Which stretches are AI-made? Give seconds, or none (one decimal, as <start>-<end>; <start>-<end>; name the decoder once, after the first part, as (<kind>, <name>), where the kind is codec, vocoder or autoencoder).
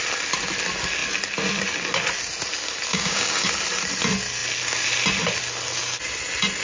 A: 2.9-3.5 (codec, DAC)